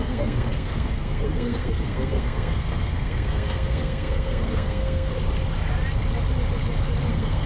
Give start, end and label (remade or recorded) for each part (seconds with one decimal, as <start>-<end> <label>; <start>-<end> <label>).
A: 0.0-5.1 remade; 5.1-7.1 recorded; 7.1-7.5 remade